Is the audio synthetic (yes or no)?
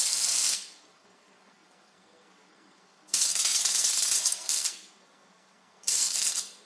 yes